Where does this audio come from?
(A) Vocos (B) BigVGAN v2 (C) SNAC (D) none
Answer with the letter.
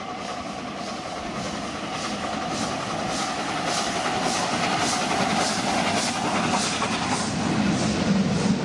D